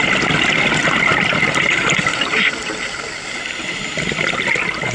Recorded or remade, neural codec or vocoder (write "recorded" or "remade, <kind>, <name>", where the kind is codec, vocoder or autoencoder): recorded